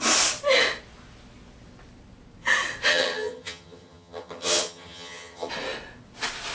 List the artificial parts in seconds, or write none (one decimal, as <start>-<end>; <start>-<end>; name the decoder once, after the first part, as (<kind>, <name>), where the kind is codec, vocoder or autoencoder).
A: 2.9-5.5 (vocoder, HiFi-GAN)